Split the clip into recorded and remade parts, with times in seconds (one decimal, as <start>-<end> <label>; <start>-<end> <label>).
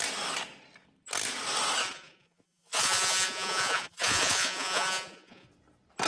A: 0.0-1.8 recorded; 1.8-5.5 remade; 5.5-6.1 recorded